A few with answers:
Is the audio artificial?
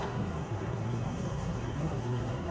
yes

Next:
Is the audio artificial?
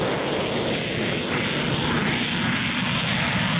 no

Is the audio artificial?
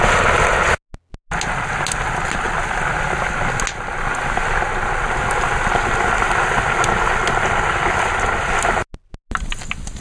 no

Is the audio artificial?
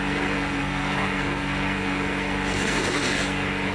yes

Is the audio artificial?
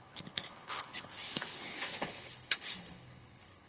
yes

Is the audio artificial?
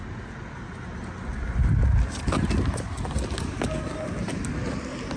no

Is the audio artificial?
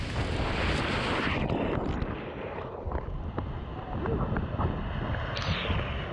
no